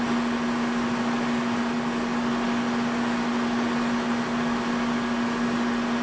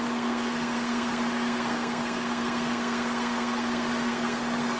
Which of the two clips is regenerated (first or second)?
second